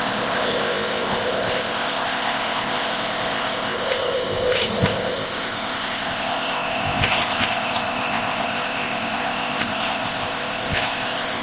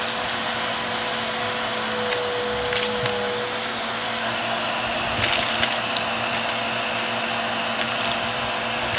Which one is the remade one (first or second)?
first